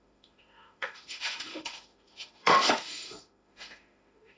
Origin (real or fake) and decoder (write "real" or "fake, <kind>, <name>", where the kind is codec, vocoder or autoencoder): fake, autoencoder, DAC-VAE